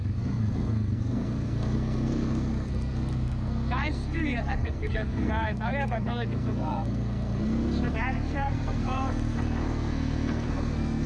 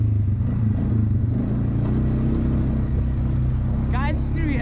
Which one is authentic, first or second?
second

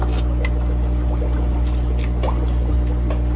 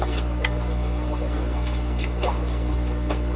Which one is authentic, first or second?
first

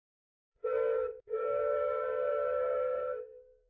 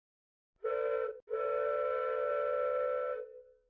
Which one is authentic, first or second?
second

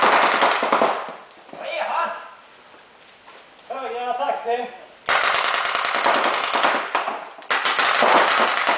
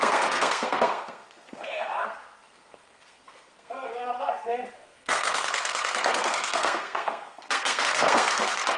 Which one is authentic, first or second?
first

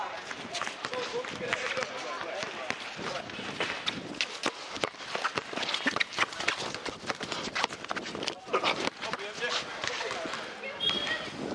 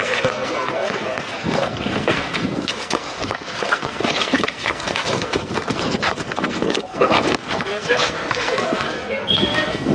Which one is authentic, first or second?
first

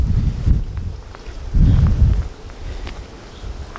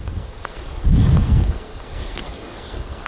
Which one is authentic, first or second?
first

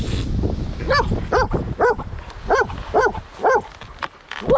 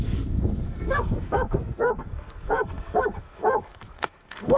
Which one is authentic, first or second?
first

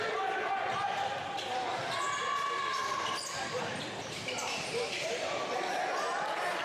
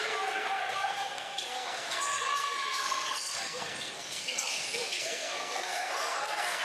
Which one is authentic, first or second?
first